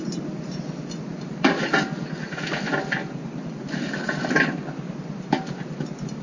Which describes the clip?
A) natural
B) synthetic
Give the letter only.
A